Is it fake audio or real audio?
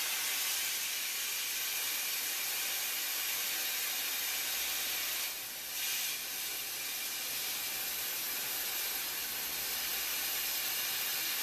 real